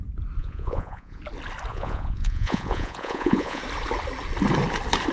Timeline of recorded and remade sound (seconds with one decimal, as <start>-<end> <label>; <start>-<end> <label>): 0.0-0.4 recorded; 0.4-1.2 remade; 1.2-1.7 recorded; 1.7-3.6 remade; 3.6-5.1 recorded